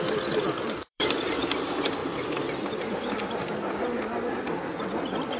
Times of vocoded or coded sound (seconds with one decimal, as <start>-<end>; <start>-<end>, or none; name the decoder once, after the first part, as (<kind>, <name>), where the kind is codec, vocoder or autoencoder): 0.8-1.4 (vocoder, BigVGAN v2)